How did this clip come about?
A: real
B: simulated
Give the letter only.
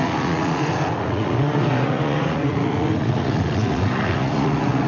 B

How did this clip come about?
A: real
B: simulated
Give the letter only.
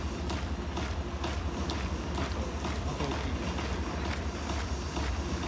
A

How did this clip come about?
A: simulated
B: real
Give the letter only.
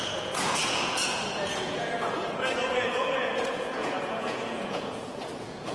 A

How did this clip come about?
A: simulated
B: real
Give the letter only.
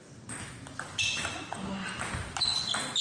B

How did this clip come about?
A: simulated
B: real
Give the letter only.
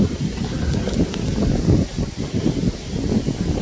B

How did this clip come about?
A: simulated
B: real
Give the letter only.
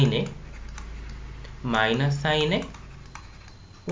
B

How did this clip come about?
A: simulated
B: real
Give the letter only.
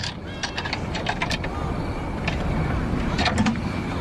B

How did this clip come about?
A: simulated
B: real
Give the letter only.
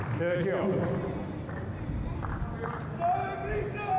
B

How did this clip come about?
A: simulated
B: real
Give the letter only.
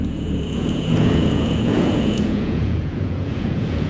A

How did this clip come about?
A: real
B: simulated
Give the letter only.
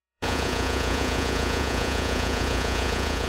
B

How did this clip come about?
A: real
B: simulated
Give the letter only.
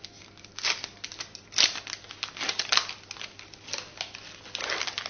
A